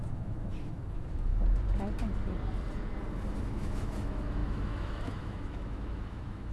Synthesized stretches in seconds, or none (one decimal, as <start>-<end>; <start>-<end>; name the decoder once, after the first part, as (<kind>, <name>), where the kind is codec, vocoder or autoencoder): 0.0-1.3 (autoencoder, DAC-VAE); 3.4-6.5